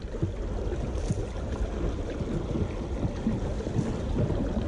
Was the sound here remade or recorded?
recorded